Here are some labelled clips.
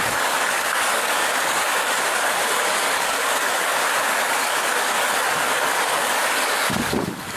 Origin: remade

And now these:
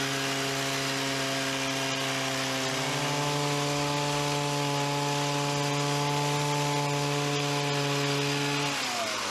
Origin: recorded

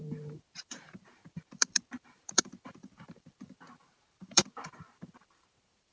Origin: remade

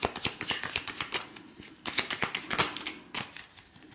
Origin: recorded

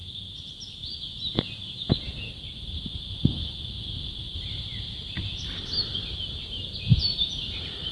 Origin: recorded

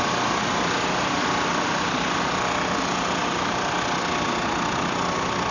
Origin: recorded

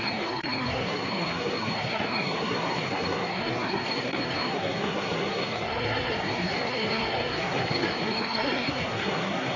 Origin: remade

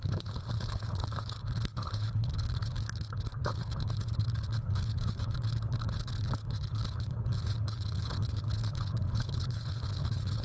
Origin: remade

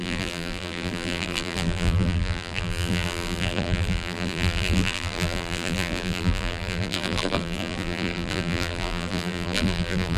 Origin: remade